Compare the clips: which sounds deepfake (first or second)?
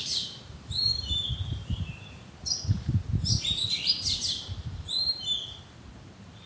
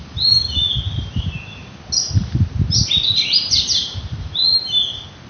first